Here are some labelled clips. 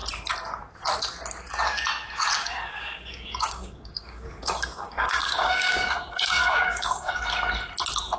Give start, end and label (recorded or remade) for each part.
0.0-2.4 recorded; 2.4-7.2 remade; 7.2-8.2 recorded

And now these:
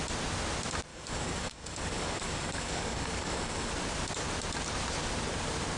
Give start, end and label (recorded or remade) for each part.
0.0-0.9 recorded; 0.9-3.7 remade; 3.7-5.8 recorded

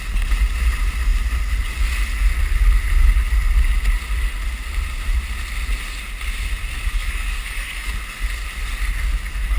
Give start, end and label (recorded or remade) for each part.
0.0-6.9 recorded; 6.9-7.9 remade; 7.9-9.6 recorded